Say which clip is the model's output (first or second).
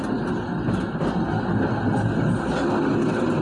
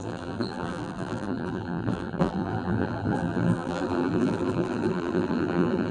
second